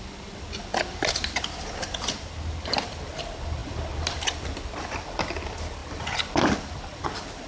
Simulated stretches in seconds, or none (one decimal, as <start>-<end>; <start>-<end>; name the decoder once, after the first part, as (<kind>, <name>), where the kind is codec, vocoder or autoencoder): 0.7-2.9 (vocoder, BigVGAN v2); 3.6-4.4; 5.8-7.5